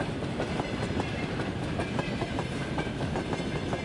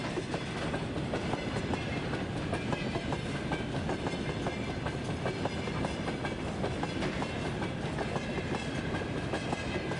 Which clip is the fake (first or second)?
first